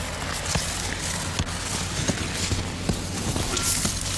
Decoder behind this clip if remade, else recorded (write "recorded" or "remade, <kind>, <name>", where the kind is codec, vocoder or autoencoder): recorded